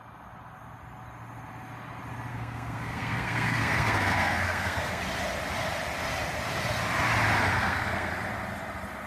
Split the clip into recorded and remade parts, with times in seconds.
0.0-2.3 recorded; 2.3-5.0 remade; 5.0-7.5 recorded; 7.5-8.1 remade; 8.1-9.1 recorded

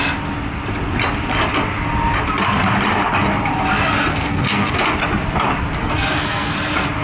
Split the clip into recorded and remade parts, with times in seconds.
0.0-4.1 recorded; 4.1-4.7 remade; 4.7-5.8 recorded; 5.8-6.5 remade; 6.5-7.0 recorded

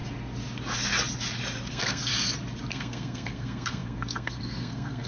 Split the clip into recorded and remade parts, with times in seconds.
0.0-1.7 recorded; 1.7-2.1 remade; 2.1-2.7 recorded; 2.7-5.1 remade

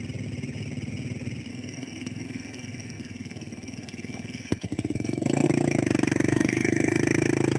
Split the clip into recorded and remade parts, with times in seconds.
0.0-1.5 recorded; 1.5-5.5 remade; 5.5-6.3 recorded; 6.3-7.0 remade; 7.0-7.6 recorded

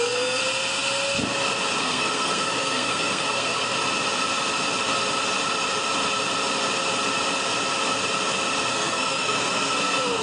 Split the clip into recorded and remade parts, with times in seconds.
0.0-0.4 remade; 0.4-1.8 recorded; 1.8-3.7 remade; 3.7-8.7 recorded; 8.7-10.2 remade

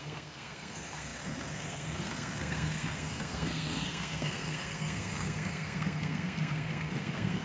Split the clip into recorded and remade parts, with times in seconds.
0.0-7.4 remade

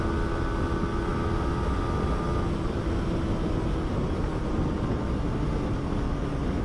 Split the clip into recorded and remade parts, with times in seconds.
0.0-6.6 recorded